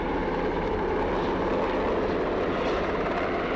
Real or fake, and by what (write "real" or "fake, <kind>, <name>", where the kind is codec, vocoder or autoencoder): real